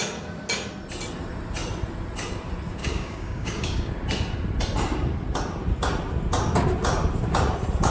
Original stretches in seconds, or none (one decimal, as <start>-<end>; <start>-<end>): 0.0-2.8; 3.9-7.9